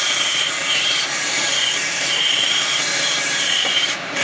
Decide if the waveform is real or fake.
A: fake